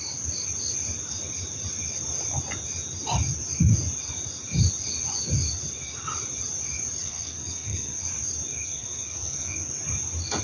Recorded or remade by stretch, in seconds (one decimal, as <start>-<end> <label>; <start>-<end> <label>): 0.0-7.0 recorded; 7.0-8.0 remade; 8.0-8.5 recorded; 8.5-9.7 remade; 9.7-10.4 recorded

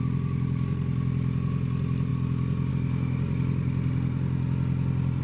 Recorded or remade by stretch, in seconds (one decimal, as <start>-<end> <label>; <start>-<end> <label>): 0.0-5.2 recorded

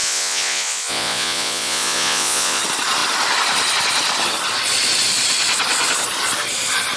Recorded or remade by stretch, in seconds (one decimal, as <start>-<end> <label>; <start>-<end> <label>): 0.0-2.6 remade; 2.6-7.0 recorded

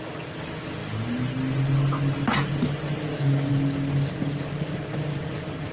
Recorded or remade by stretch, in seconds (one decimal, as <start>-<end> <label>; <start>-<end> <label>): 0.0-5.7 recorded

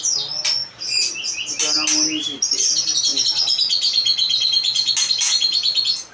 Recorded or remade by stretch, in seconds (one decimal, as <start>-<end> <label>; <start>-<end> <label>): 0.0-6.1 recorded